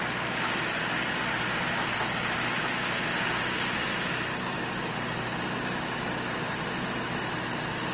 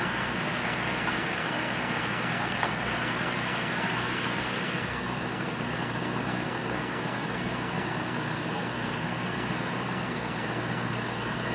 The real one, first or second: first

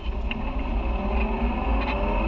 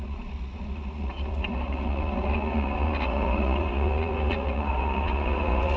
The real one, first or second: first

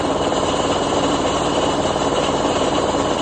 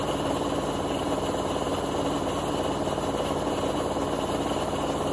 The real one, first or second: second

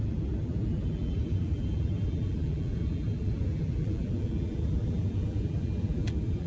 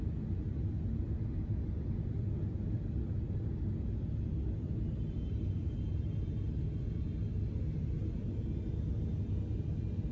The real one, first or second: second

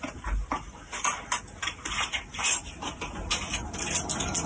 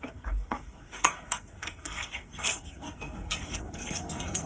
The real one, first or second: first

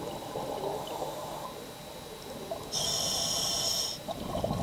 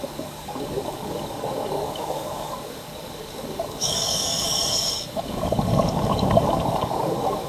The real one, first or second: first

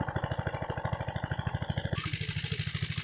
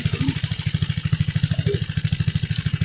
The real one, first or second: first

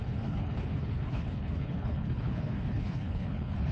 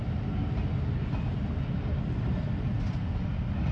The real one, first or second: second